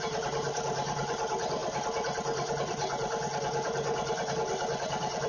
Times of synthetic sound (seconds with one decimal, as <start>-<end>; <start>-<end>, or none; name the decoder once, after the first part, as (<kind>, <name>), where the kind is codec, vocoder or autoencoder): none

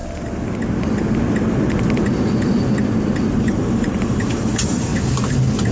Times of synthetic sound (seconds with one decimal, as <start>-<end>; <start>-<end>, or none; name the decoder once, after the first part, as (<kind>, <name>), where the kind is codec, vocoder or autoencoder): 3.4-4.9 (vocoder, BigVGAN v2)